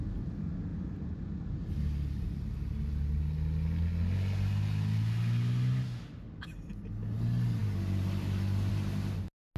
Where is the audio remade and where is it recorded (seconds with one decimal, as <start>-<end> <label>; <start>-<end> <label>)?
0.0-9.6 recorded